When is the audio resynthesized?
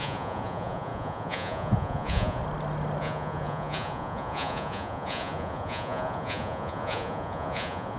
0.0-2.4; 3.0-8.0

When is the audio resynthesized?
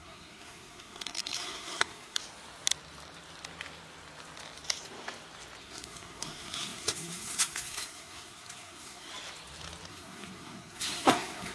0.0-2.2; 5.6-9.1; 9.9-11.5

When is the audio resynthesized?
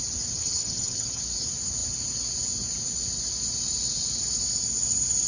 0.4-1.2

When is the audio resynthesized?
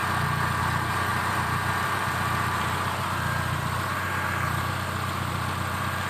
0.6-6.1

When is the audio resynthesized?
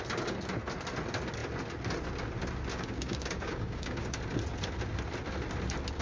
2.7-4.2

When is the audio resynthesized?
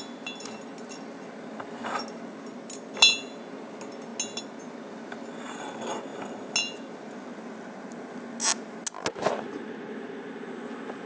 none